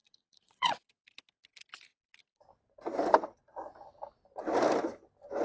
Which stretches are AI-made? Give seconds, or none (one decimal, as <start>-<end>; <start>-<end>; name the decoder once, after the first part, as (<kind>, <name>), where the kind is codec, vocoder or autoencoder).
0.0-0.9 (vocoder, Vocos)